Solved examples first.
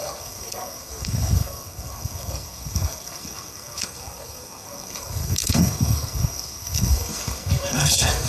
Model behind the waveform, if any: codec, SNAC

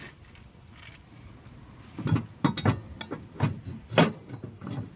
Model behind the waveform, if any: none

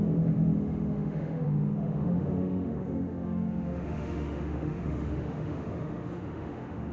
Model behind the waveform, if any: autoencoder, DAC-VAE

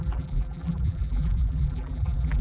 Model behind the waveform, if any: vocoder, BigVGAN v2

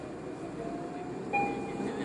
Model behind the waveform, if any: none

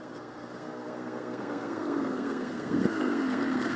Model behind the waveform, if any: codec, SNAC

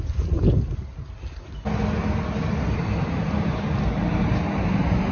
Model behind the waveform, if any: none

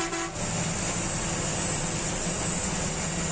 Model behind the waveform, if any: none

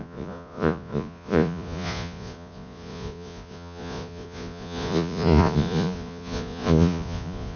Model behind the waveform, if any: vocoder, Vocos